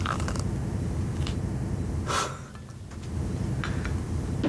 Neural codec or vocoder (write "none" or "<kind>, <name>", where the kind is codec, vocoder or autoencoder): none